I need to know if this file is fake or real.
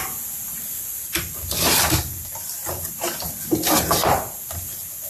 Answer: real